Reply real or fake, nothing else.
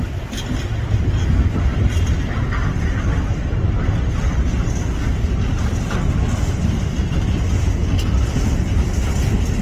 real